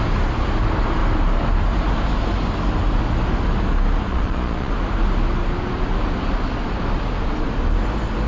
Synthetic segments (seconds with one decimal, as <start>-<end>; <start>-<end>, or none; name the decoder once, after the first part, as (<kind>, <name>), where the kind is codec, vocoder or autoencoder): 4.1-4.7 (vocoder, Vocos)